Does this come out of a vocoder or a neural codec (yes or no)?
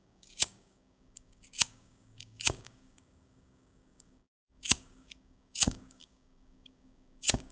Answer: yes